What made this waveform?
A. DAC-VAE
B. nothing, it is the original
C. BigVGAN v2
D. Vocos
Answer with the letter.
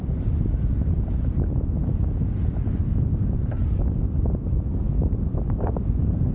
B